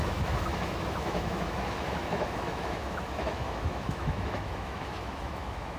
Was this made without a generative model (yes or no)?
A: no